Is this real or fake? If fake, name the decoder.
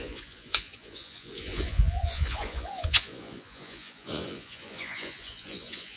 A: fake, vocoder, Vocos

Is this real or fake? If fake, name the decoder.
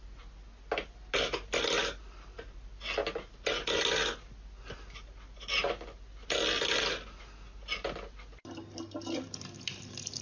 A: real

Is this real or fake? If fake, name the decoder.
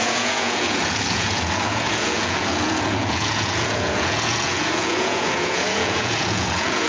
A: fake, vocoder, Vocos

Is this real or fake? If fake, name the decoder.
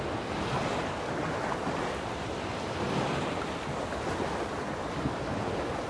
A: real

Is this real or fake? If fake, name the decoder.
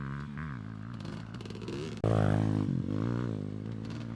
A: real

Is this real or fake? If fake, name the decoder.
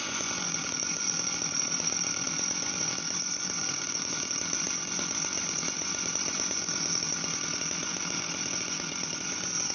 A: fake, vocoder, Vocos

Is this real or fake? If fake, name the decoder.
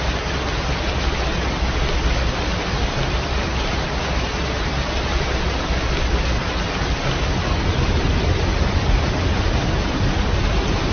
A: real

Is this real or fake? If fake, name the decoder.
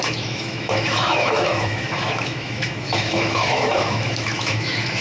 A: fake, autoencoder, DAC-VAE